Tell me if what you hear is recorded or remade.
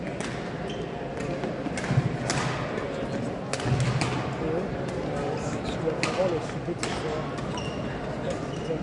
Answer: recorded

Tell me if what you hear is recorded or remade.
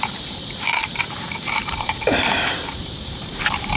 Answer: remade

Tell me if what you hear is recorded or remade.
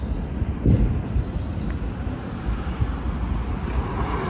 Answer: recorded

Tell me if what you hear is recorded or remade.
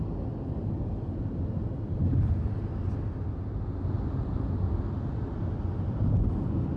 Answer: recorded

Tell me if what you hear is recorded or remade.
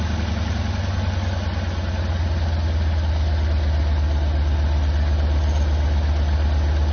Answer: recorded